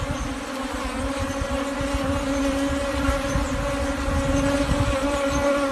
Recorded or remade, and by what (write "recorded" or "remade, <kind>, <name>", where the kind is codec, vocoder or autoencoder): recorded